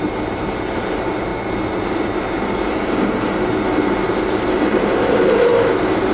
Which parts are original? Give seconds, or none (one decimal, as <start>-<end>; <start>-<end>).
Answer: 1.3-4.3; 5.5-6.1